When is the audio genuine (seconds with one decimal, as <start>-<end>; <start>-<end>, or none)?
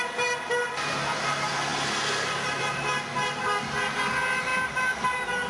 0.0-5.5